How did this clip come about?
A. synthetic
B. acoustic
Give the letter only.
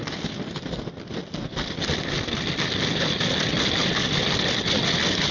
B